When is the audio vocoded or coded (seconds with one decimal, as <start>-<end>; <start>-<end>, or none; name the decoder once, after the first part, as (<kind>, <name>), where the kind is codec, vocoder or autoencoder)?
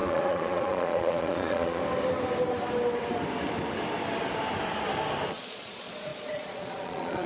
0.0-1.8 (vocoder, Vocos); 5.3-7.3